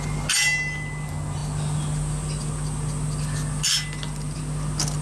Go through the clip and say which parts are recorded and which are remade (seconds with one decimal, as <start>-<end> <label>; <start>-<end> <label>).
0.0-5.0 recorded